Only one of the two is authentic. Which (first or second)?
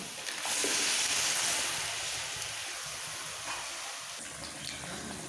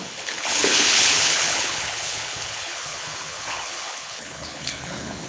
first